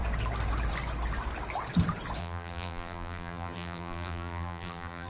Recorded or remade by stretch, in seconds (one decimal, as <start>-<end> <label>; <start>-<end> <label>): 0.0-2.2 recorded; 2.2-5.1 remade